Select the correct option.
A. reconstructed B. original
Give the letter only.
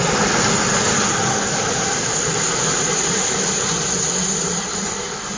B